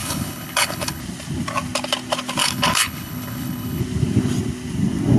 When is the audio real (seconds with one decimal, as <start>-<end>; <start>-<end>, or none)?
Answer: 1.0-2.4; 3.8-5.2